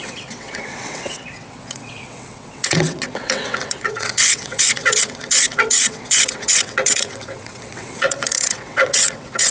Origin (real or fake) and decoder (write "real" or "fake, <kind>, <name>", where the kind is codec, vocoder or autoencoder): fake, vocoder, WaveNeXt